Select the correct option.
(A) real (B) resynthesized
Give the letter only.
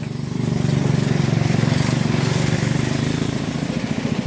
B